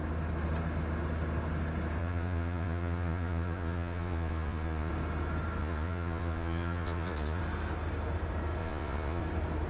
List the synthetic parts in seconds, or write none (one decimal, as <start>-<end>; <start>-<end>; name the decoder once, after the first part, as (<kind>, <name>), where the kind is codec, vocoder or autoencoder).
2.0-4.9 (vocoder, Vocos); 5.6-7.4; 8.6-9.2